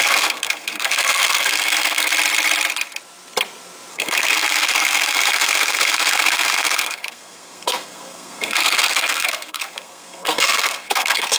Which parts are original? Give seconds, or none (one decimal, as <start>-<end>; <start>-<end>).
2.1-3.9